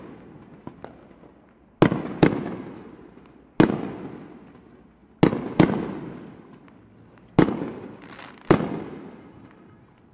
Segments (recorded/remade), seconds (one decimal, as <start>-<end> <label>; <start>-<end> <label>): 0.0-10.1 recorded